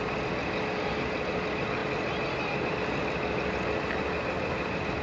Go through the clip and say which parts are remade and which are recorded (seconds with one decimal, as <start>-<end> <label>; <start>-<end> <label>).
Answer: 0.0-5.0 recorded